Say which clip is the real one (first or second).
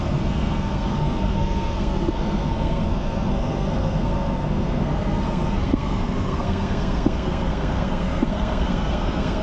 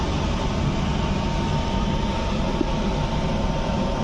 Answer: second